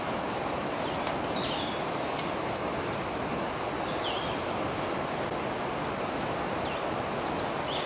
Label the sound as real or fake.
real